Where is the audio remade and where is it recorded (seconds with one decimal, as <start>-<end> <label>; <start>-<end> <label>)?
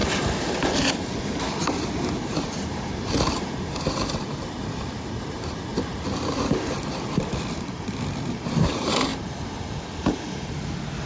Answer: 0.0-5.7 remade; 5.7-8.3 recorded; 8.3-11.1 remade